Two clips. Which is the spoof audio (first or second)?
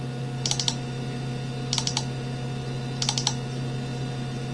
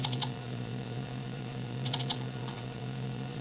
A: second